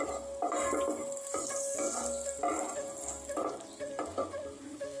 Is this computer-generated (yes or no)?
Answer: no